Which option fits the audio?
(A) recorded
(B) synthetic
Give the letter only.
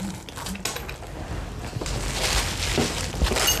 A